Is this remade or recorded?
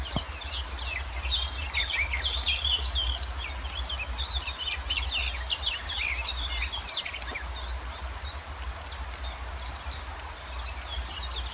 recorded